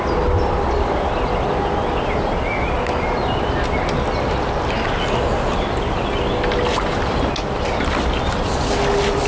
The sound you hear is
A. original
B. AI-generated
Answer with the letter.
A